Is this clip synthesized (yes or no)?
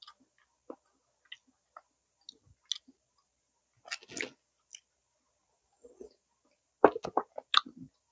no